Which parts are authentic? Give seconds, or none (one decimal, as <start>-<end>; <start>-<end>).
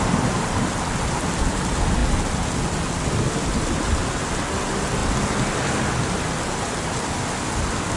0.0-8.0